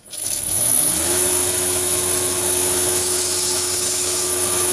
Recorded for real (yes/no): no